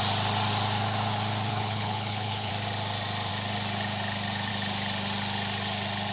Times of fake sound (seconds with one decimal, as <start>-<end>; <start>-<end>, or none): 1.5-2.5